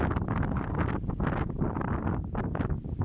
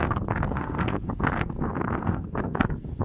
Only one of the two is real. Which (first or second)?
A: first